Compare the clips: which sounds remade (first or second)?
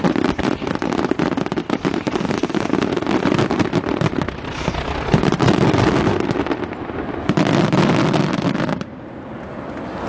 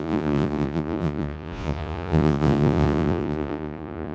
second